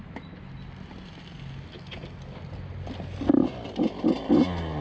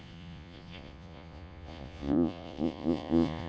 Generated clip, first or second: second